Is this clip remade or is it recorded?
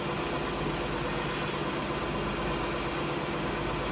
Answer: recorded